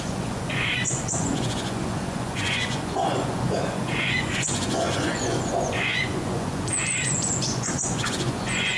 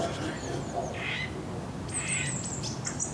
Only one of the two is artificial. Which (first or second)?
first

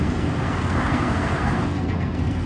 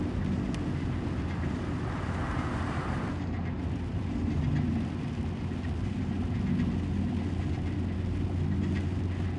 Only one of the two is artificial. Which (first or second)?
first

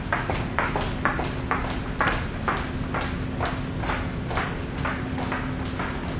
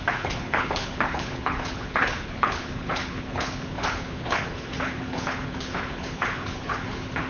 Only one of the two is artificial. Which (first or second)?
second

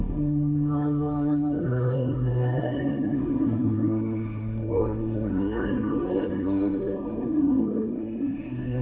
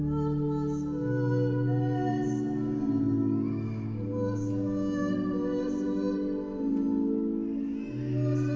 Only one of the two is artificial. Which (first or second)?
first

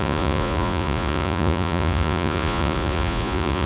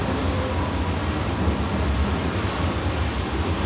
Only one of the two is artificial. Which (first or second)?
first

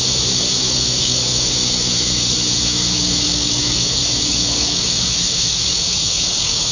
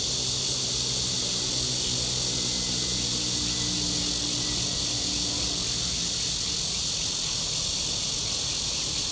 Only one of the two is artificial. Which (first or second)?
first